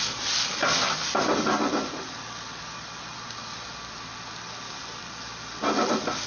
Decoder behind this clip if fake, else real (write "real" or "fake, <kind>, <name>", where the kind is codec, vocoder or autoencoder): real